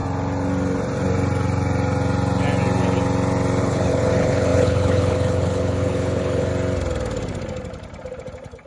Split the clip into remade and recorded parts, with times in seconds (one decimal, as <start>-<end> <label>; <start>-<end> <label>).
0.0-3.6 recorded; 3.6-6.5 remade; 6.5-8.7 recorded